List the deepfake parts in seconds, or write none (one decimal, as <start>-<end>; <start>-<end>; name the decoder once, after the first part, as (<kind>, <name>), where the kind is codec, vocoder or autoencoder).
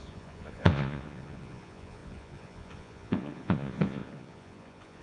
0.0-5.0 (vocoder, Vocos)